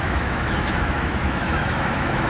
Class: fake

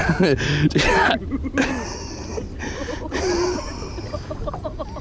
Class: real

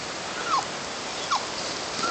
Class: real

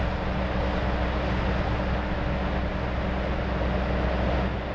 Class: real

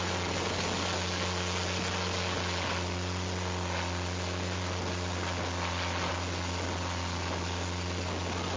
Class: real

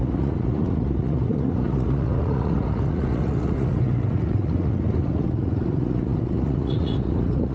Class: fake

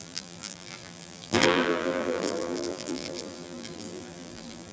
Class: fake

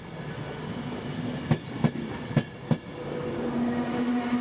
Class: real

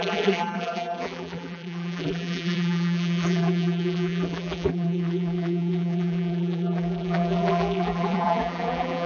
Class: fake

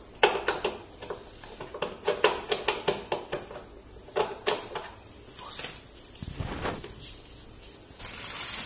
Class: real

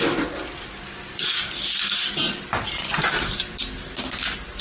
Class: real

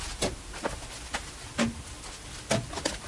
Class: real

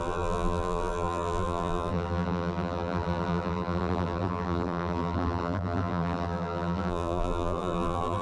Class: fake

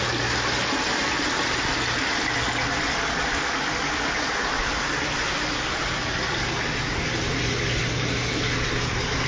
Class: real